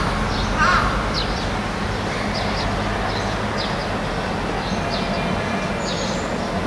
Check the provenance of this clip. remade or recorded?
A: recorded